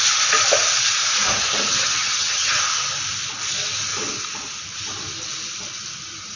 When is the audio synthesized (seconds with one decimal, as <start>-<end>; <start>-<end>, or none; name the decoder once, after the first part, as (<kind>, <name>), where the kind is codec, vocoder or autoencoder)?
1.8-2.6 (vocoder, HiFi-GAN)